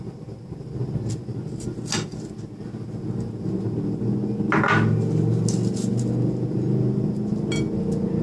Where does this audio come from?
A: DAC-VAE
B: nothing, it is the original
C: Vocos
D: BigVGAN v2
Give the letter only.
B